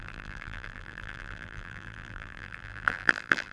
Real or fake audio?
fake